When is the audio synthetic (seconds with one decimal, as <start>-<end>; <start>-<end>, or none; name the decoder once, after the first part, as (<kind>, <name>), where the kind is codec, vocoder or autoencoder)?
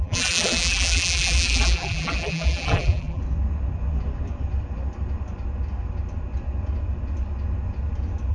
0.0-3.2 (vocoder, BigVGAN v2)